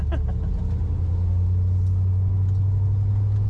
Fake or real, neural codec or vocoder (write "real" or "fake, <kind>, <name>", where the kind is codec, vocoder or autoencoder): real